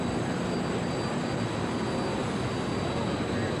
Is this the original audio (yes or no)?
yes